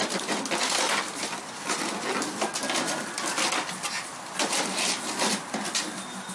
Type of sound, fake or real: real